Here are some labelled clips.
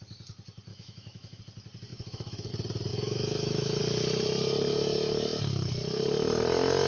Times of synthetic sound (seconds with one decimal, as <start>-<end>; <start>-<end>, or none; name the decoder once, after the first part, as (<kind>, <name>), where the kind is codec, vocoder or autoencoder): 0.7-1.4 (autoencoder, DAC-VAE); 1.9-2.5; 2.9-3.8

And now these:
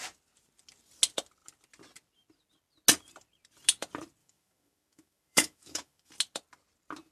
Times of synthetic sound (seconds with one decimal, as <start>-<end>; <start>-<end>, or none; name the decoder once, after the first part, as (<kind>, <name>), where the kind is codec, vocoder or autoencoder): 4.2-6.1 (autoencoder, DAC-VAE)

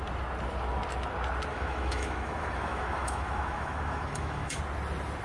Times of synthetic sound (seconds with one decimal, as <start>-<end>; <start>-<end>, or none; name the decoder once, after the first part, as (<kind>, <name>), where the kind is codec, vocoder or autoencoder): 1.5-4.6 (autoencoder, DAC-VAE)

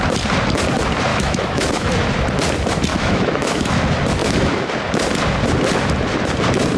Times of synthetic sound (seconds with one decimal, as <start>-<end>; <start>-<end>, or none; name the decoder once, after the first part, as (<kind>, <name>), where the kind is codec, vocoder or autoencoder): 1.1-1.9 (autoencoder, DAC-VAE); 2.9-3.8; 4.2-4.7

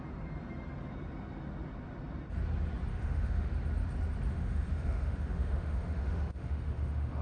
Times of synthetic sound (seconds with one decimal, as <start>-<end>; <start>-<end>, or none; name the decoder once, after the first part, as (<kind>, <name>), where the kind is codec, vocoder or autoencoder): 2.9-3.5 (autoencoder, DAC-VAE); 4.3-7.2